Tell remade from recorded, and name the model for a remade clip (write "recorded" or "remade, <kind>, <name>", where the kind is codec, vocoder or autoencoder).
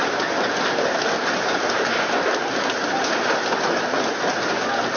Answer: recorded